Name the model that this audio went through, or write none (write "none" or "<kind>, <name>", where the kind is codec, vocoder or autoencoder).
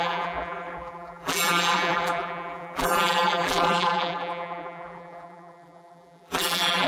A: vocoder, BigVGAN v2